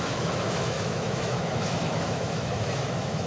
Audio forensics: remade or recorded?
remade